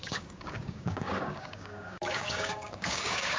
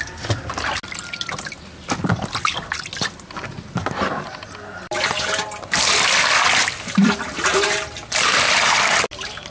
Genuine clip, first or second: second